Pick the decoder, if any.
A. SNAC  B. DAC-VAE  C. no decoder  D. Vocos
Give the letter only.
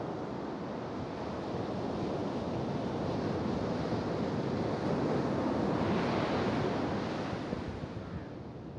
C